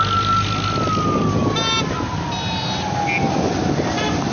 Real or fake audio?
real